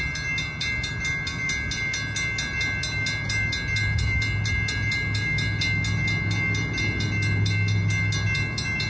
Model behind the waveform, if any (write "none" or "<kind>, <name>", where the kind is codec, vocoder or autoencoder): none